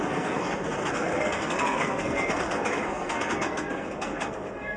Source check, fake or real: fake